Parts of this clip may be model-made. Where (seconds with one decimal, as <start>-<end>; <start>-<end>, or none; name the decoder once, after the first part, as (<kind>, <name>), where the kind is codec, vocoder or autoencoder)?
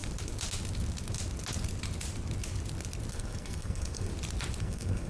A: 3.1-4.1 (codec, SNAC); 4.6-5.1